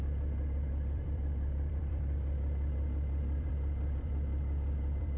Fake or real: fake